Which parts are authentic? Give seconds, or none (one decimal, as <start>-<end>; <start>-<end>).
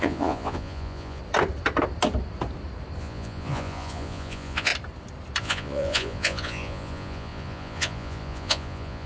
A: 1.2-3.0; 4.7-5.4